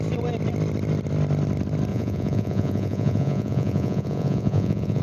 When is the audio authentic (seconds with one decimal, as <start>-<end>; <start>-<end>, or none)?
0.0-1.9